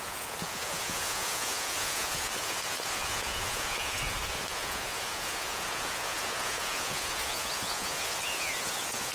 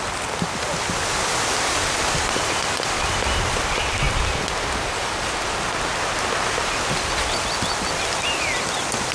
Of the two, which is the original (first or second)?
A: second